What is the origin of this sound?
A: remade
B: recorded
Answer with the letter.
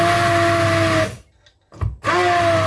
B